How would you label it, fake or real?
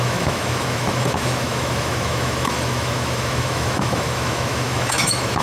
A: fake